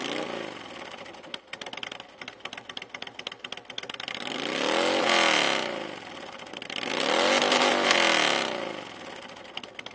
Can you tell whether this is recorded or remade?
recorded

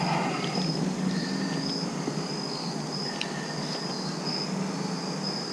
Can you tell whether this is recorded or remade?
recorded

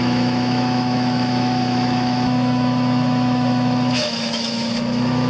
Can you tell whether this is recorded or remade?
remade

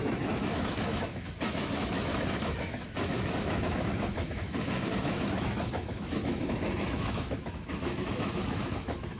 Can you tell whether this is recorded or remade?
remade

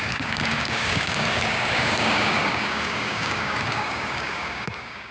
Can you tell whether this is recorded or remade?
remade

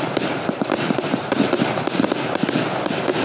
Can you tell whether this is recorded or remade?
remade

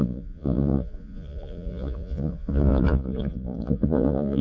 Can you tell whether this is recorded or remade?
remade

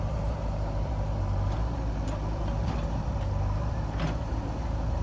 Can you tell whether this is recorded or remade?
remade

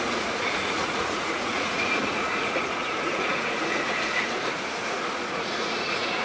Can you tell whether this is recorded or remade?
remade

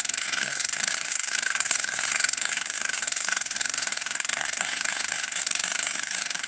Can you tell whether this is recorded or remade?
remade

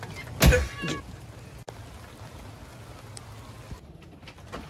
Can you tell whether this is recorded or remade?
recorded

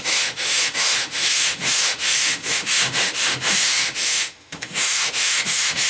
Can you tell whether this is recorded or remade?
remade